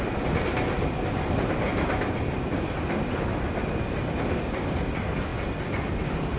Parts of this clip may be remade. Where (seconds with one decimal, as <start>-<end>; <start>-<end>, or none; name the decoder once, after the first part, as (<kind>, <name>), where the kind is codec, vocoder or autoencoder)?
none